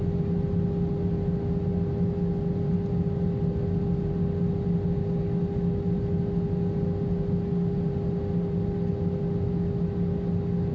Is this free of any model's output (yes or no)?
yes